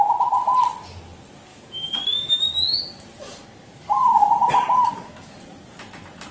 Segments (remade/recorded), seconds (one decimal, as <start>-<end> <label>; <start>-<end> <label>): 0.0-1.5 recorded; 1.5-2.4 remade; 2.4-4.9 recorded; 4.9-5.4 remade; 5.4-6.3 recorded